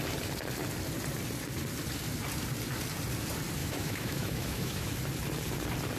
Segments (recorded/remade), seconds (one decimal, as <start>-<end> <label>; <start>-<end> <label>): 0.0-3.6 recorded; 3.6-4.9 remade; 4.9-6.0 recorded